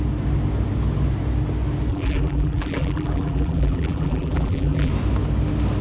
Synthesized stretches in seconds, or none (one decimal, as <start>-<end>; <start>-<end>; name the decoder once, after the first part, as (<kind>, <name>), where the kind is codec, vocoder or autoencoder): 1.9-4.9 (vocoder, BigVGAN v2)